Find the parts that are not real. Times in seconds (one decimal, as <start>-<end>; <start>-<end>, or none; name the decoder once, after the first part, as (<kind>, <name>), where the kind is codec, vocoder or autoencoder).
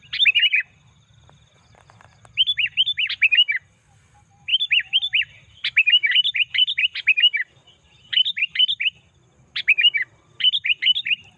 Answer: none